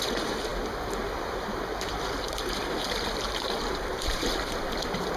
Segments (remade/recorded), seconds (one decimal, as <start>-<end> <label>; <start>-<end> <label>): 0.0-5.2 remade